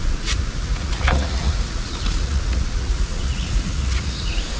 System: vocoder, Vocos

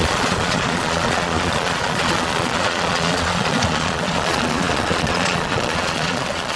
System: vocoder, Vocos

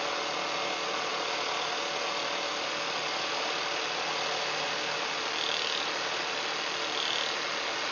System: none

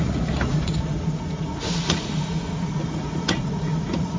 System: vocoder, Vocos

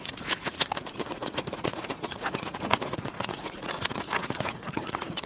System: vocoder, Vocos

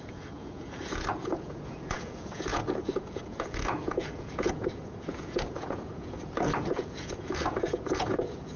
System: vocoder, Vocos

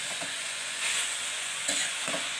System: vocoder, Vocos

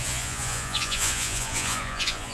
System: vocoder, Vocos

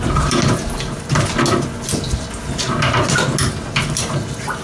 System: none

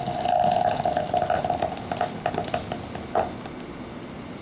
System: none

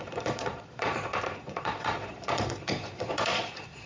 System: vocoder, Vocos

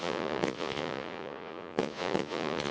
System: vocoder, Vocos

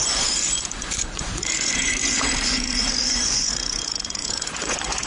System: vocoder, Vocos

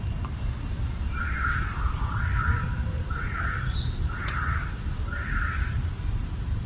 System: none